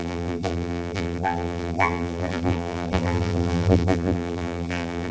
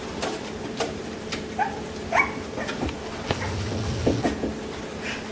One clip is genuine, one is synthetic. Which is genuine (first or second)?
second